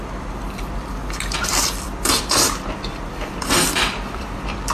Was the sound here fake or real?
fake